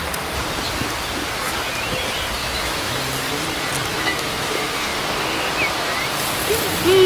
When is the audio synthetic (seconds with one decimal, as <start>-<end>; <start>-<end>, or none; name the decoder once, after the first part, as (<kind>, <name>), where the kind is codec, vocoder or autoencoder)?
2.4-3.0 (autoencoder, DAC-VAE); 3.9-4.5